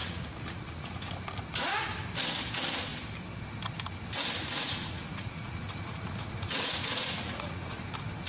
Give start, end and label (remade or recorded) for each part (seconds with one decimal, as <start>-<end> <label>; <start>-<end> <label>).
0.0-1.0 remade; 1.0-4.4 recorded; 4.4-7.8 remade; 7.8-8.3 recorded